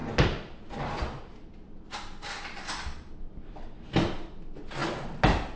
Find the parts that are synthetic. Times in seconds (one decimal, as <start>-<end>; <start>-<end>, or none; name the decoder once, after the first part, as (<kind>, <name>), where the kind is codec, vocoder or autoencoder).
none